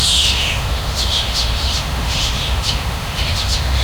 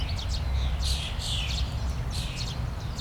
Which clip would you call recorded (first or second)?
second